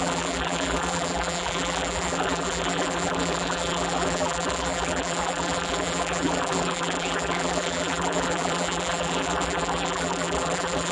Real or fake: fake